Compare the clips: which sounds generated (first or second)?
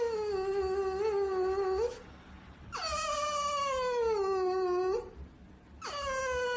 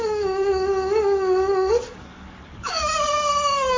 second